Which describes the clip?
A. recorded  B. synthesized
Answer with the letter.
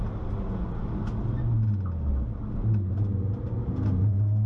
A